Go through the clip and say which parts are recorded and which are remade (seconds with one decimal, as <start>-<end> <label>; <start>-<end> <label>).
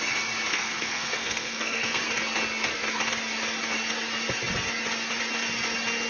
0.0-0.5 recorded; 0.5-2.0 remade; 2.0-6.1 recorded